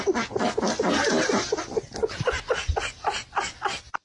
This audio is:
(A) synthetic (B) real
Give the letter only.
B